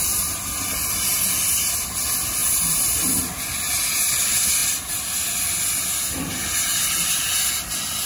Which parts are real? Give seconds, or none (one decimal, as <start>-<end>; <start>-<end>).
0.0-2.4; 2.9-8.1